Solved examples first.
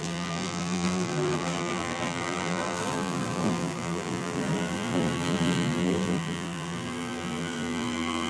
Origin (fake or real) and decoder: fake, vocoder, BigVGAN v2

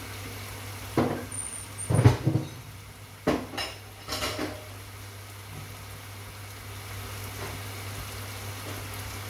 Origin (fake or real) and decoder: real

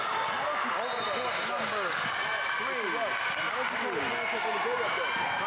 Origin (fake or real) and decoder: real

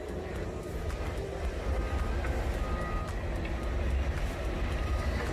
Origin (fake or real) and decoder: real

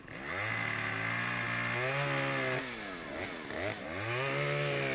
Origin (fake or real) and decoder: real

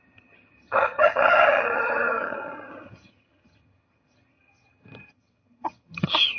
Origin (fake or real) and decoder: fake, vocoder, HiFi-GAN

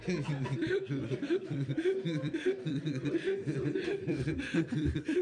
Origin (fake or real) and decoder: fake, vocoder, BigVGAN v2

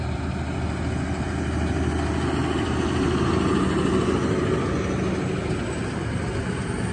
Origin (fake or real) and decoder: real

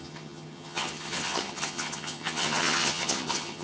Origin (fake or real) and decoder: fake, vocoder, HiFi-GAN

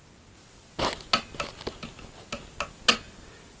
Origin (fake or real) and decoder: real